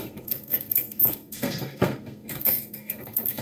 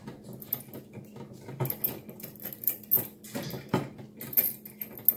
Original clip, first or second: second